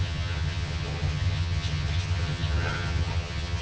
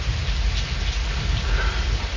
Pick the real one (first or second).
second